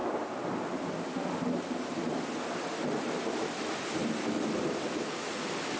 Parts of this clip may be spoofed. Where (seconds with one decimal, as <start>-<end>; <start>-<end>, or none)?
4.0-4.6